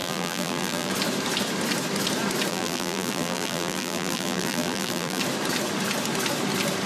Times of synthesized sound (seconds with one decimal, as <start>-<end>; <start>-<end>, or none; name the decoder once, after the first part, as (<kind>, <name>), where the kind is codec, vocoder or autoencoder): 0.0-0.9 (vocoder, BigVGAN v2); 2.5-5.2